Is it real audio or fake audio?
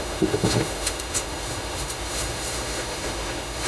fake